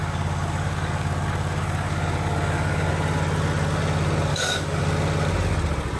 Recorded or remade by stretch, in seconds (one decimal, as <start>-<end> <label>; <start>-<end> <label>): 0.0-2.9 remade; 2.9-4.3 recorded; 4.3-4.8 remade; 4.8-6.0 recorded